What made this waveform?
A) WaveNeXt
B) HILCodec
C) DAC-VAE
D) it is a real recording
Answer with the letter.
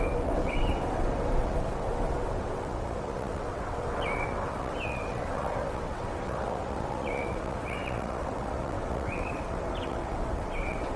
A